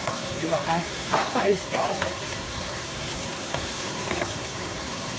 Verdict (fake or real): fake